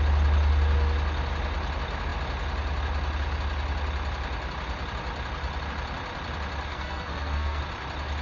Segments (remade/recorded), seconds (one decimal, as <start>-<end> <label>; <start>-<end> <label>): 0.0-6.7 recorded; 6.7-7.6 remade; 7.6-8.2 recorded